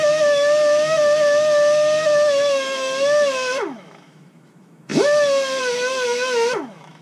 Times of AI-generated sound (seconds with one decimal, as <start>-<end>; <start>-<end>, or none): 0.0-7.0